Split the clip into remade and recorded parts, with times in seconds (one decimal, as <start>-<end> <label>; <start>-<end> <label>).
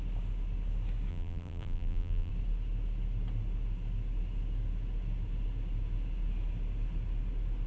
0.0-1.1 recorded; 1.1-2.3 remade; 2.3-7.7 recorded